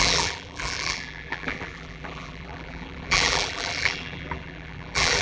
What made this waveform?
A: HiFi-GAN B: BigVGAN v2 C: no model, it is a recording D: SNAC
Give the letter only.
B